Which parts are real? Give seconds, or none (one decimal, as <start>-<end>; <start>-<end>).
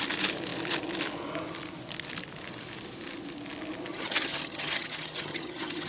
0.0-3.9